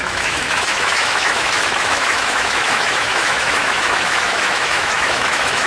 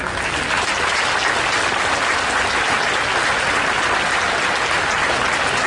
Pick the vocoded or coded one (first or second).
first